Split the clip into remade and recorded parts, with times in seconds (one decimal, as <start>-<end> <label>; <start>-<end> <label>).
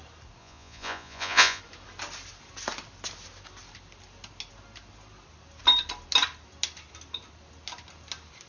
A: 0.0-0.4 recorded; 0.4-1.6 remade; 1.6-8.5 recorded